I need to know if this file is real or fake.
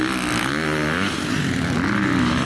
real